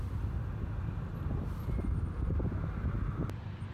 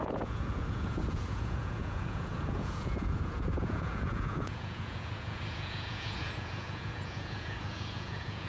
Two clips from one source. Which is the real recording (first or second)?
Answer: first